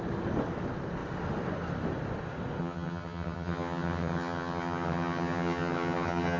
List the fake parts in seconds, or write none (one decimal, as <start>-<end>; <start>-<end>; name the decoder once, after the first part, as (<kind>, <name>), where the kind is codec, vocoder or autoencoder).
2.6-6.4 (vocoder, HiFi-GAN)